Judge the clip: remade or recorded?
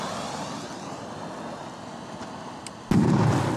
recorded